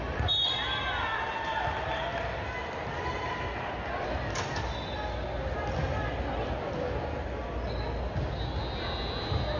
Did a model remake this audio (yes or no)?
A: no